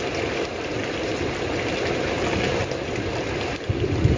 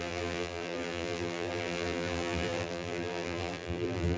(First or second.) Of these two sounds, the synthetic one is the second